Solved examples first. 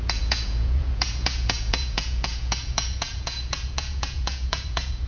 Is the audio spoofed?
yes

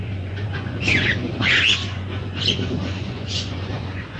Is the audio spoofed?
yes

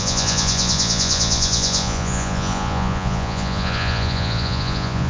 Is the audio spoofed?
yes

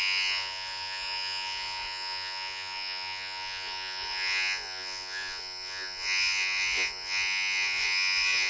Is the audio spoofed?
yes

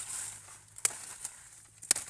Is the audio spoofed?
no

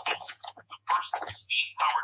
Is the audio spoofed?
yes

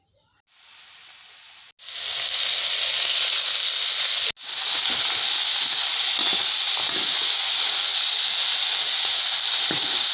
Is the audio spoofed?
no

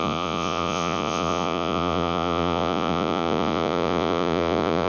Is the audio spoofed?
yes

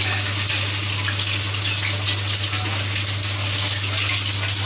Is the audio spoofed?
no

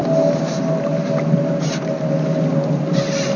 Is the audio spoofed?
no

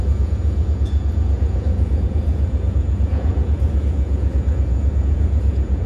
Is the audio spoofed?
yes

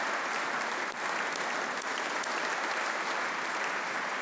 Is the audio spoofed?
no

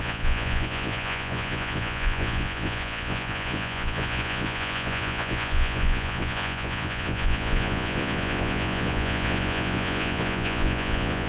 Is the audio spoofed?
yes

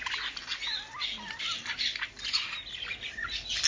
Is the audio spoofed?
no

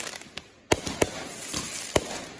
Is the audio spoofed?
no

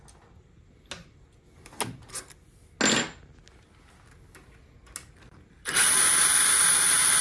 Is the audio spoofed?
no